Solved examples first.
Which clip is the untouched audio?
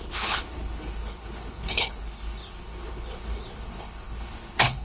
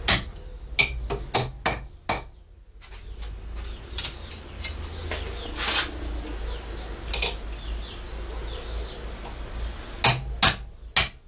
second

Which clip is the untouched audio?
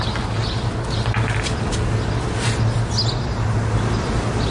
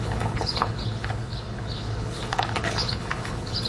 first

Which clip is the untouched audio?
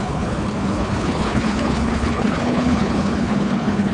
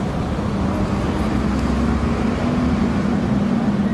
second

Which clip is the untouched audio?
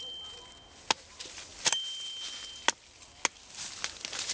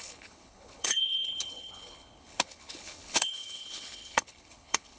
first